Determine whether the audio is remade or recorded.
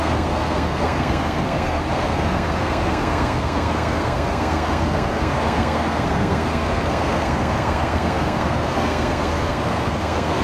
remade